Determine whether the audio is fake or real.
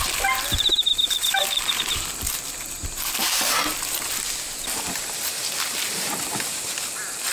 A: real